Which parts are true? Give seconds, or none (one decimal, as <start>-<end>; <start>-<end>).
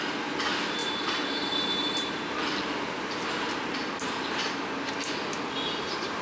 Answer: 0.0-0.8; 4.5-6.2